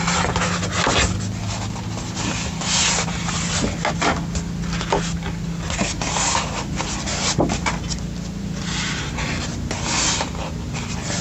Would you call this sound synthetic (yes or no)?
no